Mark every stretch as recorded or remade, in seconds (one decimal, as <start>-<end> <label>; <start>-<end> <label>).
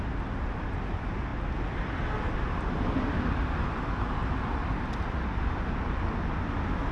0.0-6.9 recorded